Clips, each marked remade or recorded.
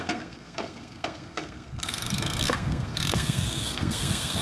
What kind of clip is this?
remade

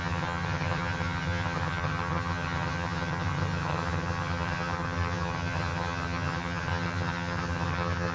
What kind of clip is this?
remade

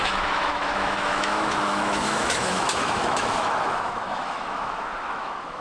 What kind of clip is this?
remade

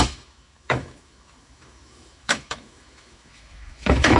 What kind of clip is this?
remade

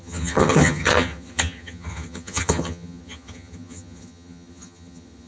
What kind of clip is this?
remade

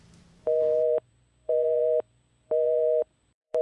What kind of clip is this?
remade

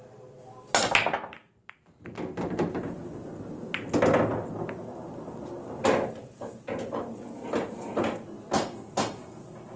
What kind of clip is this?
recorded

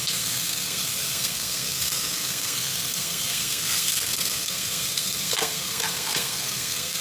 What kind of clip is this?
remade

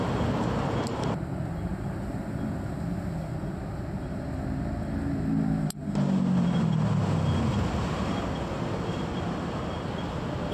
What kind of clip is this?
recorded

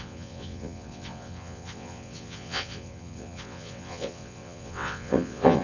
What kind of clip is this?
remade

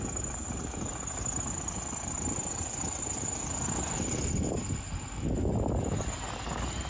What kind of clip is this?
recorded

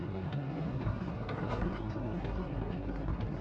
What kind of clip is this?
remade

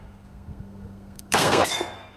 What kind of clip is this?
remade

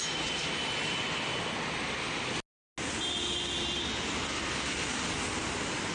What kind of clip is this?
recorded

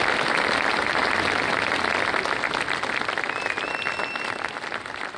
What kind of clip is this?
recorded